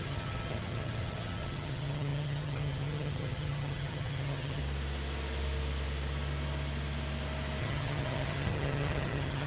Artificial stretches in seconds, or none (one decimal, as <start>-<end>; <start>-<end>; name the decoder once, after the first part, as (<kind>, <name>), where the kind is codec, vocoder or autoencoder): 0.0-4.6 (vocoder, HiFi-GAN); 7.6-9.5